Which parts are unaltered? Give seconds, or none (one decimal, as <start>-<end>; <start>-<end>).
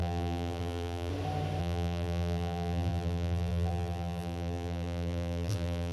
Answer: 1.1-1.6